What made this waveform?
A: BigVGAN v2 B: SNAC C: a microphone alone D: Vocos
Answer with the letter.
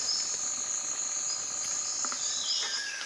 C